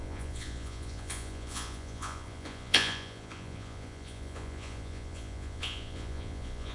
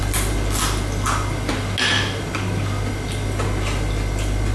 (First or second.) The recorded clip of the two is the second